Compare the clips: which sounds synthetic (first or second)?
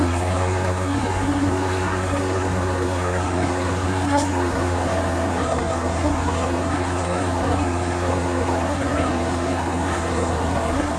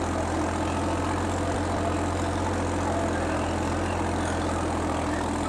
first